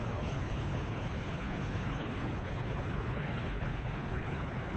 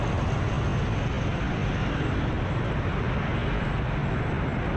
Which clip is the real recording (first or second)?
second